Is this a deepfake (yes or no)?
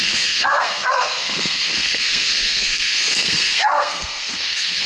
yes